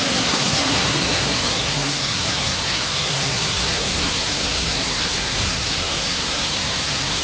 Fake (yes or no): yes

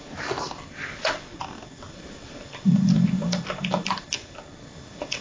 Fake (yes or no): no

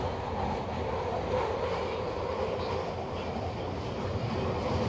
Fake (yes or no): no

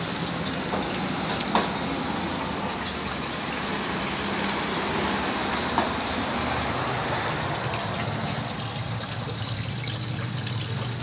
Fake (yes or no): no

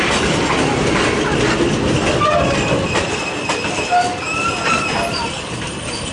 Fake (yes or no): no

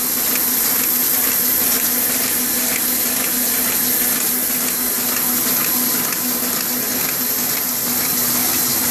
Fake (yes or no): no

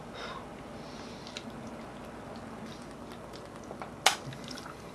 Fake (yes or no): no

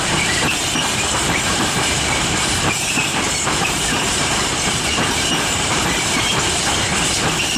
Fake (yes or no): yes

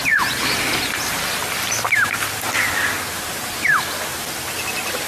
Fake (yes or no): no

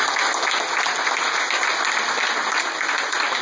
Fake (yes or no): no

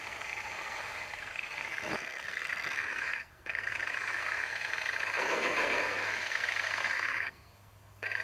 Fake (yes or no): yes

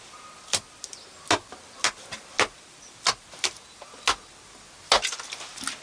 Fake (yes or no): no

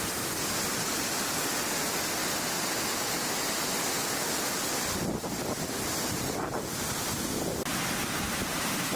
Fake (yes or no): no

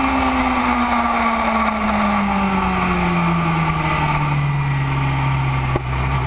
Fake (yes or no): no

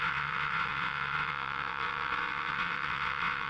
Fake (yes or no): yes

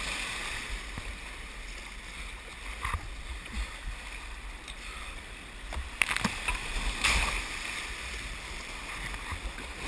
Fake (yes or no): no